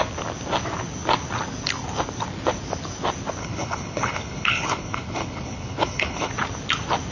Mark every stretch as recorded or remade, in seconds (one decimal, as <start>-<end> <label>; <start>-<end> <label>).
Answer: 0.0-3.4 recorded; 3.4-6.3 remade; 6.3-7.1 recorded